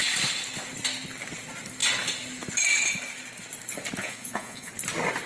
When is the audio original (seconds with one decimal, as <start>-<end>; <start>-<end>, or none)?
0.0-4.0; 4.7-5.3